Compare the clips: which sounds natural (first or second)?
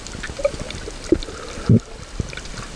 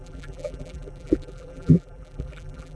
first